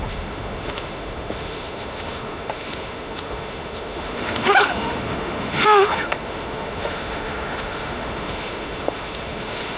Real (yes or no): no